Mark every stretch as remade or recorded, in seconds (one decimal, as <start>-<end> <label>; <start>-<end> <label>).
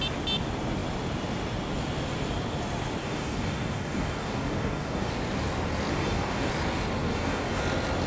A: 0.0-3.0 recorded; 3.0-5.1 remade; 5.1-5.9 recorded; 5.9-6.5 remade; 6.5-7.1 recorded; 7.1-7.6 remade; 7.6-8.1 recorded